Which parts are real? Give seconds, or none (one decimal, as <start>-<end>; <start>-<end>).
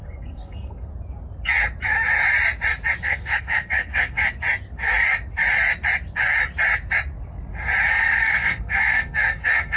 0.9-3.0; 4.2-7.9